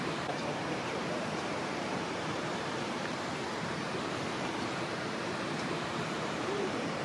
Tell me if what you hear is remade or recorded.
remade